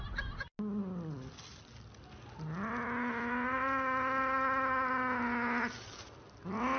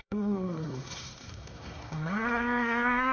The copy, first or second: second